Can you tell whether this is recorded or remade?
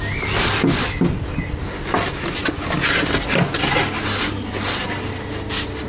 recorded